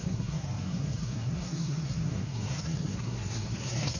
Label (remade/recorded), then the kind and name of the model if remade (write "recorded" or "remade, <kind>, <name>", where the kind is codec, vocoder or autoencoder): remade, codec, SNAC